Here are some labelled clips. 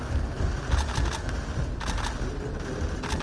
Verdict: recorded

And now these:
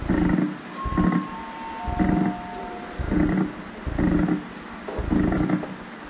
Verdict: recorded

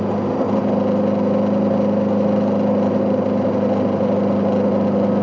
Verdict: recorded